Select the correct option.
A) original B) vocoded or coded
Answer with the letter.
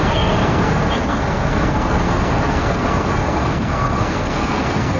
B